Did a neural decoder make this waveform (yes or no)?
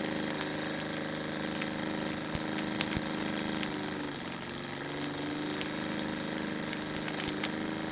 no